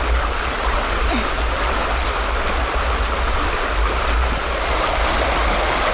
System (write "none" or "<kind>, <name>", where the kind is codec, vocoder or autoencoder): none